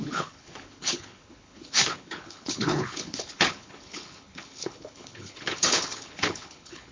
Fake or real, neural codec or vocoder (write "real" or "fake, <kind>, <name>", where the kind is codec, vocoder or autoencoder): fake, codec, HILCodec